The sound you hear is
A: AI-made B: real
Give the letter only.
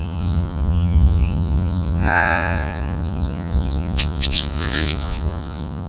A